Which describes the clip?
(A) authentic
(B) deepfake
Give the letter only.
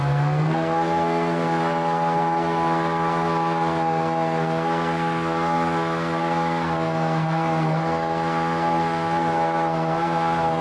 B